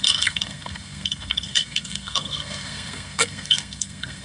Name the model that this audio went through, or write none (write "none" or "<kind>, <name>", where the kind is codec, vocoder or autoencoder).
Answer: codec, SNAC